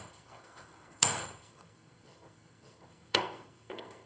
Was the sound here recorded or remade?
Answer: remade